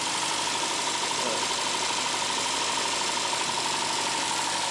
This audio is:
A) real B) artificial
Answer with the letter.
A